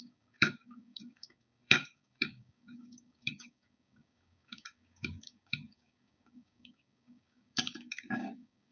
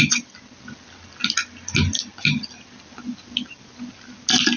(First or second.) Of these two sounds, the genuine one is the second